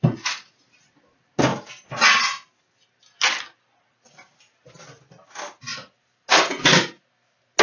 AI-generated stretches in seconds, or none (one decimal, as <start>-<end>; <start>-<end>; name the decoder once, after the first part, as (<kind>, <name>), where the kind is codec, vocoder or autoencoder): none